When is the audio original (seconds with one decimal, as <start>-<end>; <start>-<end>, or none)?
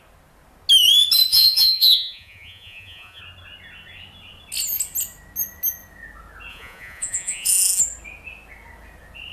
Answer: 0.0-1.3; 3.2-6.5; 7.8-9.3